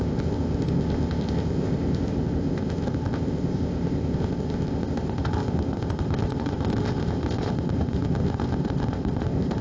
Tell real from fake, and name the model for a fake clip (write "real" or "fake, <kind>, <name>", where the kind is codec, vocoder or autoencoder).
fake, codec, ZipCodec